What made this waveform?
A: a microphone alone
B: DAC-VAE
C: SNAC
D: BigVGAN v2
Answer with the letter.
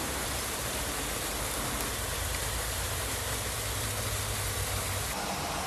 A